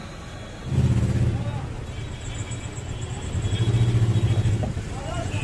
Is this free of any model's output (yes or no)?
yes